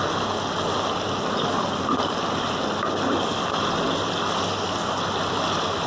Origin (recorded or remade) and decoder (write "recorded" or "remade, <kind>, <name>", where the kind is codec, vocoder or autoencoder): recorded